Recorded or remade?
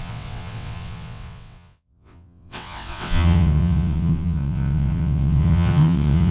remade